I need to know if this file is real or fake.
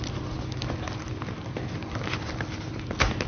real